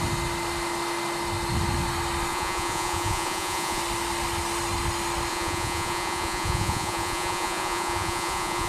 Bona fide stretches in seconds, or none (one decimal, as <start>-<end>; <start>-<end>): 0.0-2.3; 3.8-5.3